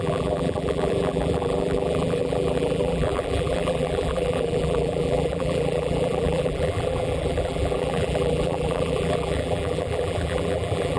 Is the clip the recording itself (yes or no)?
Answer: no